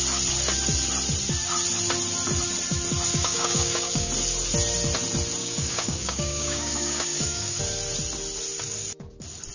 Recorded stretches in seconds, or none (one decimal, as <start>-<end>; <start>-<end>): 0.0-3.1; 4.1-5.4; 7.6-9.5